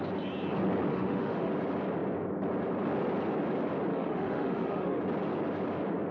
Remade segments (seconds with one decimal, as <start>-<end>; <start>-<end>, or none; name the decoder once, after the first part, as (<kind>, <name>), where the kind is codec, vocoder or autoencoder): 0.9-1.5 (autoencoder, DAC-VAE); 3.9-5.0